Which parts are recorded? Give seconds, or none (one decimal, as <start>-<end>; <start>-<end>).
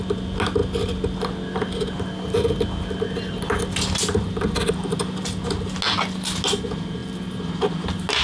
0.0-8.2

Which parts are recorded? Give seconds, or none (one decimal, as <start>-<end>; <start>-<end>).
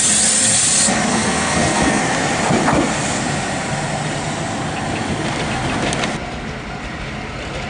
0.0-1.1; 2.0-7.7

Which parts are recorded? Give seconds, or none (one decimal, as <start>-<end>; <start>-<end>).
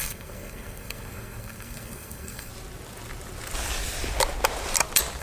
2.5-5.2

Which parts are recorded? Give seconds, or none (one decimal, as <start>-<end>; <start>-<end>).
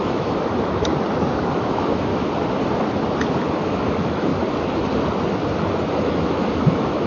0.9-1.5; 2.1-3.5; 4.3-5.9